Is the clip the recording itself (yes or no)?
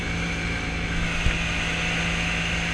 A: yes